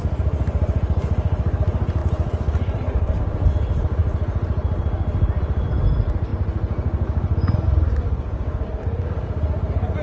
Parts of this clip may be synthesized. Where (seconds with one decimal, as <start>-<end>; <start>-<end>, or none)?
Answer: 2.0-3.2